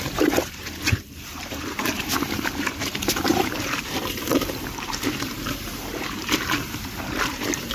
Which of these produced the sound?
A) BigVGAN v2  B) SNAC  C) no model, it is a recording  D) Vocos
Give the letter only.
A